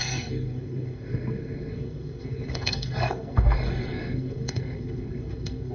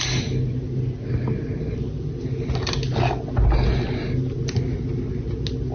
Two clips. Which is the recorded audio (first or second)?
second